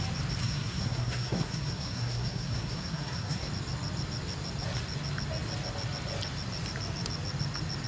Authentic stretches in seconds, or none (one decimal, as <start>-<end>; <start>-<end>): 0.0-0.4; 3.5-7.9